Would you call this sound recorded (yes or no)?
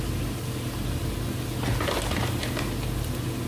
yes